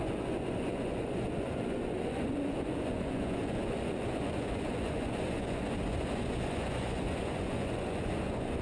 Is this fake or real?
fake